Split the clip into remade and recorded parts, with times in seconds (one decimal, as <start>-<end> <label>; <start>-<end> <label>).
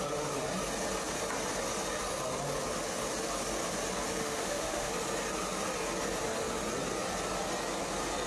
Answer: 0.0-4.2 recorded; 4.2-4.9 remade; 4.9-8.3 recorded